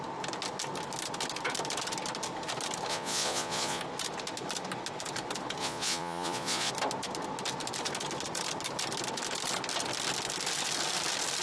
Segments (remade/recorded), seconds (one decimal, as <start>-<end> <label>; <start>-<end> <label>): 0.0-2.9 recorded; 2.9-3.8 remade; 3.8-5.6 recorded; 5.6-6.7 remade; 6.7-11.4 recorded